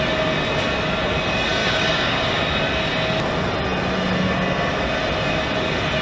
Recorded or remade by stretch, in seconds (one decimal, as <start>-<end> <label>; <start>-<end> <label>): 0.0-1.6 recorded; 1.6-2.4 remade; 2.4-6.0 recorded